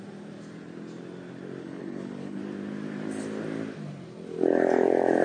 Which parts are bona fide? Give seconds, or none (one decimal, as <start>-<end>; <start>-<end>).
0.0-1.6; 2.4-5.2